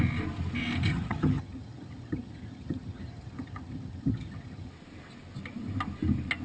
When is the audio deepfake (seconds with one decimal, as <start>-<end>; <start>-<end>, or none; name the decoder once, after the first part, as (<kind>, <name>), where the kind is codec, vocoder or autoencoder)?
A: 0.9-4.7 (vocoder, HiFi-GAN)